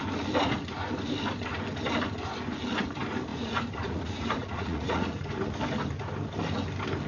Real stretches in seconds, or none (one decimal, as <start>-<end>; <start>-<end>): 0.0-3.3; 5.3-7.1